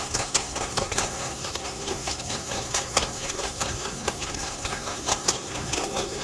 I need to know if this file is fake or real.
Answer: fake